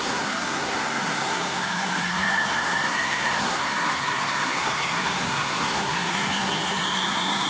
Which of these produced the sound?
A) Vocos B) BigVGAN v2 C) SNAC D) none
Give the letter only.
C